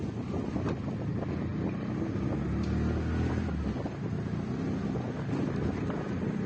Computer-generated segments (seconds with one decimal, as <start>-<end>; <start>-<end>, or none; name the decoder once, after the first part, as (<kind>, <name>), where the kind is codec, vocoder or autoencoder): none